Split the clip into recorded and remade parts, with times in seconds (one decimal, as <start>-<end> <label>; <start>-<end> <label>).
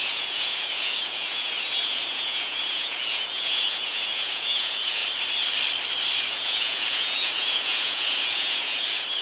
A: 0.0-5.0 remade; 5.0-6.2 recorded; 6.2-9.2 remade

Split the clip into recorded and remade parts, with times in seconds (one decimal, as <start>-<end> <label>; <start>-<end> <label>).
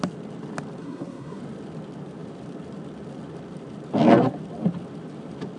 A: 0.0-0.8 recorded; 0.8-1.4 remade; 1.4-5.6 recorded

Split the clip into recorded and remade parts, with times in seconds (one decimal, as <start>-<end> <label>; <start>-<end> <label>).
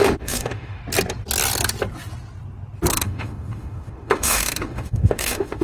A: 0.0-0.8 remade; 0.8-2.9 recorded; 2.9-5.6 remade